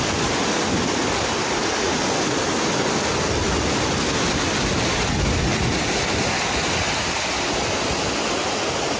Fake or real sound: real